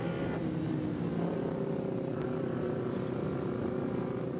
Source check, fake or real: real